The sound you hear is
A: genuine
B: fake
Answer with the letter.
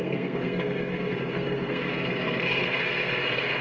B